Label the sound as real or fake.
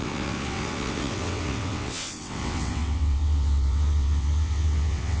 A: fake